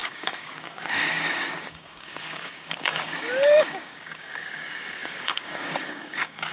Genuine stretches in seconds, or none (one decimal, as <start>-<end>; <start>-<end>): none